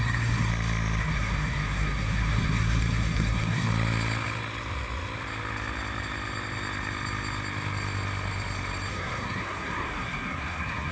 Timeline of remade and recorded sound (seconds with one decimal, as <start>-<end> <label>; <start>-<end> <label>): 0.0-0.5 remade; 0.5-1.0 recorded; 1.0-3.7 remade; 3.7-8.9 recorded; 8.9-10.9 remade